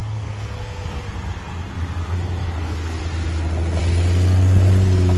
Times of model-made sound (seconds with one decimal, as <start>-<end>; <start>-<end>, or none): 0.0-1.0; 2.4-3.0